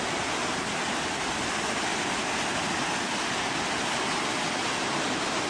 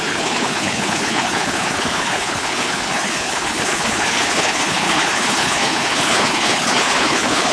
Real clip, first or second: first